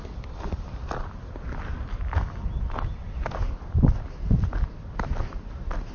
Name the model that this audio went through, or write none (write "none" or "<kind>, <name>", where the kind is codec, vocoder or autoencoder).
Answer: none